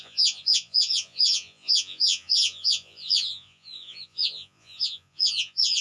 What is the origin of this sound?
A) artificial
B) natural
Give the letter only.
A